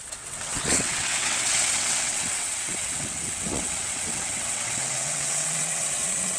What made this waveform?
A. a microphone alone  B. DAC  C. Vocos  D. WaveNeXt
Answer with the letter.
D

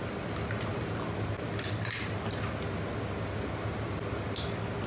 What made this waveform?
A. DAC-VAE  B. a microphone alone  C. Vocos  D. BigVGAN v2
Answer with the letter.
B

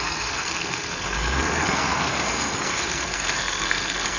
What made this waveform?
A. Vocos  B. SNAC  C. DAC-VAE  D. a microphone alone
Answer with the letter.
B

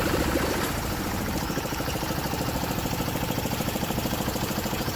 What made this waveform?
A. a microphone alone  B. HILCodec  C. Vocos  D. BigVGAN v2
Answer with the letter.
D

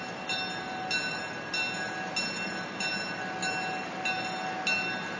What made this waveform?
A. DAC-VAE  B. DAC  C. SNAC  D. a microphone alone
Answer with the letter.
D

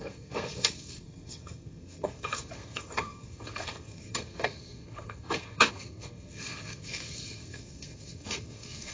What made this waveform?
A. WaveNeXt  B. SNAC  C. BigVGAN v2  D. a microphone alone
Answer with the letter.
B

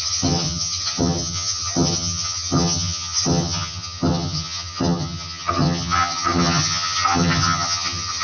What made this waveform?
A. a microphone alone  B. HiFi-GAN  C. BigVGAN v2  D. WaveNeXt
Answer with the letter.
B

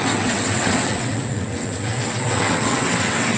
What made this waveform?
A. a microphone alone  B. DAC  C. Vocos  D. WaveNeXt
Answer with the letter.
D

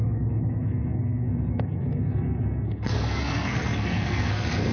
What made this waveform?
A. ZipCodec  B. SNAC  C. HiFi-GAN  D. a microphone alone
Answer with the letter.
B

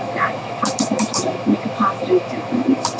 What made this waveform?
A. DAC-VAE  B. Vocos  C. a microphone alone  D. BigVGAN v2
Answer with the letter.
A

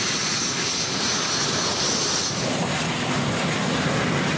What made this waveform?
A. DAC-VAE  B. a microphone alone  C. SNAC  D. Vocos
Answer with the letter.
B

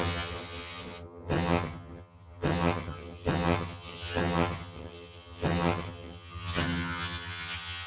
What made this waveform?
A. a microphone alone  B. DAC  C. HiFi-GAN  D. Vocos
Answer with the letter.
C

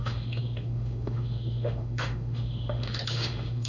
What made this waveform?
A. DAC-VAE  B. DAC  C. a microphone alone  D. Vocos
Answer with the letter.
A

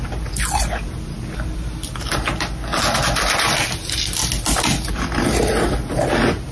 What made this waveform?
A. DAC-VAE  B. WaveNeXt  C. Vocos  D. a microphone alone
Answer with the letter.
D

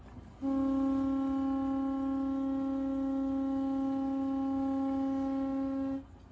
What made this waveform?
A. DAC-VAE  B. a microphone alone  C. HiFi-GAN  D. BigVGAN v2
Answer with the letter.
B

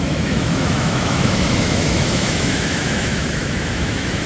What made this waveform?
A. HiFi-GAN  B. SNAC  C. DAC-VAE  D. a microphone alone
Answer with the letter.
C